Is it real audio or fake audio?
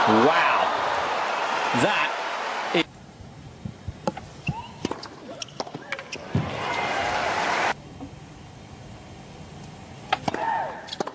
real